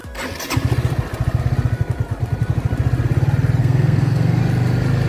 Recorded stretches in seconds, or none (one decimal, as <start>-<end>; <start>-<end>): 0.0-3.6; 4.4-5.1